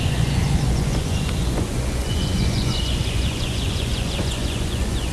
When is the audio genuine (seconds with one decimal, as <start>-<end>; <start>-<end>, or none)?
none